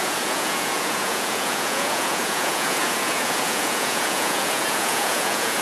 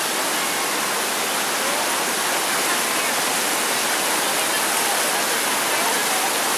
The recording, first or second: second